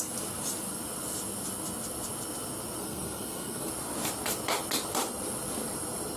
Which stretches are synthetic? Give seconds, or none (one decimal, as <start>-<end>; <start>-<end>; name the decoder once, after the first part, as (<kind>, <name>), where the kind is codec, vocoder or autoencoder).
2.8-3.7 (codec, SNAC)